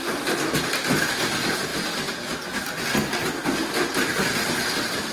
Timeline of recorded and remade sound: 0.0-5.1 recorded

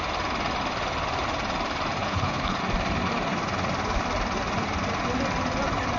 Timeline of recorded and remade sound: 0.0-2.0 recorded; 2.0-2.6 remade; 2.6-6.0 recorded

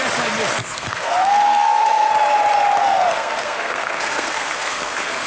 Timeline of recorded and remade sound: 0.0-0.6 recorded; 0.6-2.1 remade; 2.1-2.8 recorded; 2.8-5.3 remade

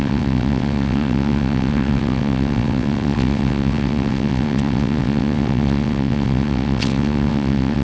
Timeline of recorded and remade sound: 0.0-7.8 remade